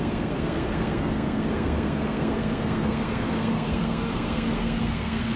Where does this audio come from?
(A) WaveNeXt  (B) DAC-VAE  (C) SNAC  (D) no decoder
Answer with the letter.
C